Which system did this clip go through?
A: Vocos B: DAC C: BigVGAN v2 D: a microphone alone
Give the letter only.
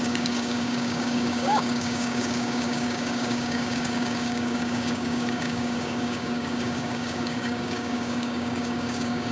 B